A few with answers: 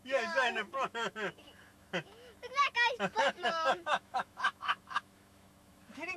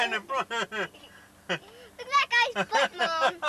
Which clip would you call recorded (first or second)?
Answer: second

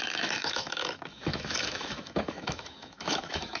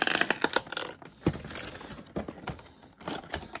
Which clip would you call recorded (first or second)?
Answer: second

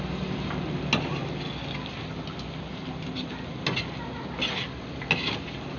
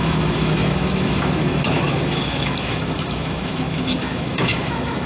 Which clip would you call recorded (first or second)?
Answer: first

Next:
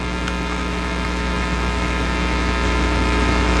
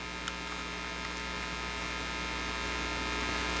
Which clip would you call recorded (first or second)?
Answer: second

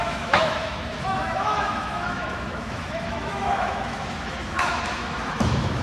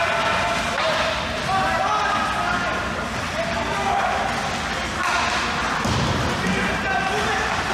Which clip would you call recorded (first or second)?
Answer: second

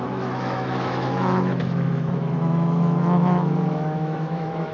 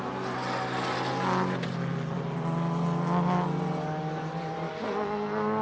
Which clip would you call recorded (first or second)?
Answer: second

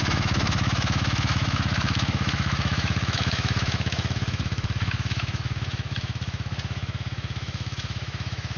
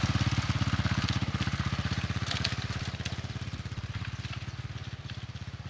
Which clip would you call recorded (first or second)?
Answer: second